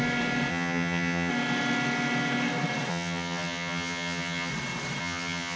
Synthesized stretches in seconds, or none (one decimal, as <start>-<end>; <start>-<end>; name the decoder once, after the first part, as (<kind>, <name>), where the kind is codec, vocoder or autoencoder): 0.5-1.3 (vocoder, HiFi-GAN); 2.9-4.5; 5.0-5.6